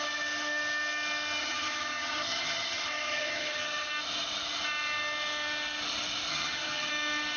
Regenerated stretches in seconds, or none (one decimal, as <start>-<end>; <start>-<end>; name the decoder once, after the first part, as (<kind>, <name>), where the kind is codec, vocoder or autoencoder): 1.4-3.9 (vocoder, HiFi-GAN); 6.3-6.9